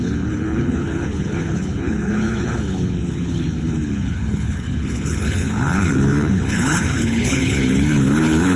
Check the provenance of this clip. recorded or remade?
remade